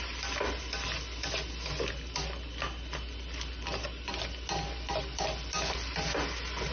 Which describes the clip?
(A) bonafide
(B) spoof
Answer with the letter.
A